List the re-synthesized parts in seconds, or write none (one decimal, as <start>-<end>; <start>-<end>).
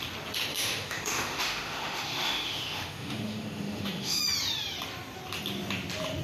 0.5-4.2